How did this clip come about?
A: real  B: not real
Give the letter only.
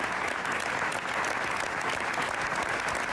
A